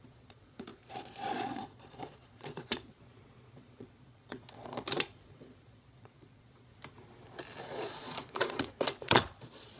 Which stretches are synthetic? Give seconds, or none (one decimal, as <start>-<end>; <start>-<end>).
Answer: 0.0-6.7; 7.6-9.8